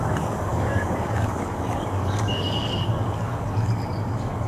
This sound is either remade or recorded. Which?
remade